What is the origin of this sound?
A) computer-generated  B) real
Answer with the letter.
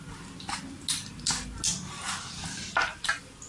B